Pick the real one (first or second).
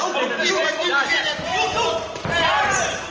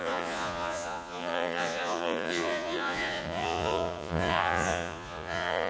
first